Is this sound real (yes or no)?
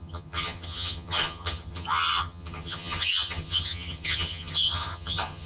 no